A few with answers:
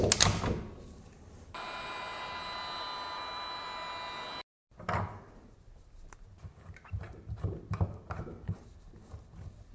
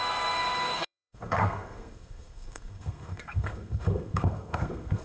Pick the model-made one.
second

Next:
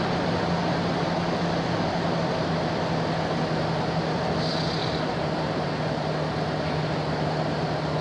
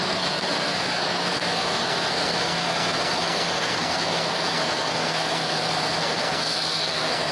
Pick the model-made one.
second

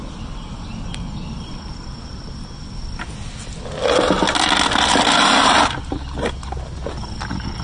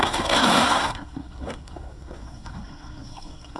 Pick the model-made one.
second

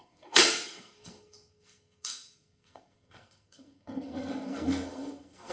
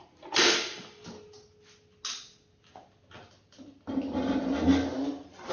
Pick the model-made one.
first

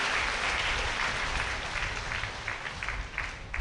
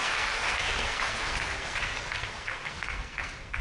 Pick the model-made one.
second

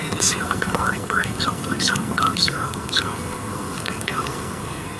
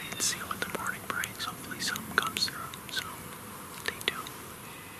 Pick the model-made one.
first